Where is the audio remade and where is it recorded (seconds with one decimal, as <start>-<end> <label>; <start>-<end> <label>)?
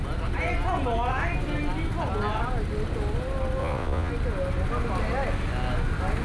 0.0-3.6 recorded; 3.6-4.1 remade; 4.1-6.2 recorded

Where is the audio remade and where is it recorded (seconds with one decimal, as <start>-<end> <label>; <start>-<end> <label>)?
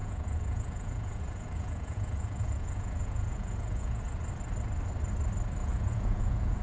0.0-4.0 remade; 4.0-5.6 recorded; 5.6-6.6 remade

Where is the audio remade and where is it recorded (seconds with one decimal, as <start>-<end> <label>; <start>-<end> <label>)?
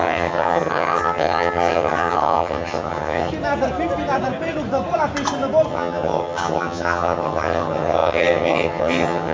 0.0-3.3 remade; 3.3-5.7 recorded; 5.7-9.3 remade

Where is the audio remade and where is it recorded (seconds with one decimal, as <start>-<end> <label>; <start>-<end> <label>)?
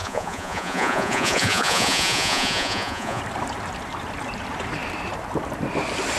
0.0-3.2 remade; 3.2-6.2 recorded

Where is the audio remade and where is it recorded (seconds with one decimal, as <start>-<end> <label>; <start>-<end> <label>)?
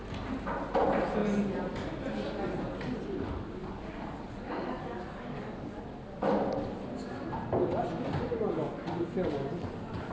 0.0-3.6 recorded; 3.6-5.8 remade; 5.8-10.1 recorded